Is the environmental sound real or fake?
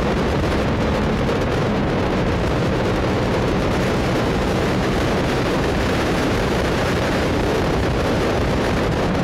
fake